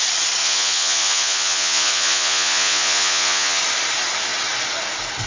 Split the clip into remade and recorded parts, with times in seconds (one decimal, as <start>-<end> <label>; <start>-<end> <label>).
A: 0.0-0.4 recorded; 0.4-3.6 remade; 3.6-5.3 recorded